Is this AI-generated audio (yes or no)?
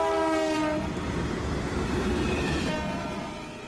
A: no